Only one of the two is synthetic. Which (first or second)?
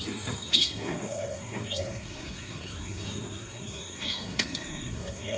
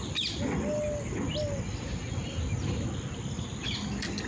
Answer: first